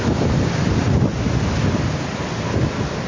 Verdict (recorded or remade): recorded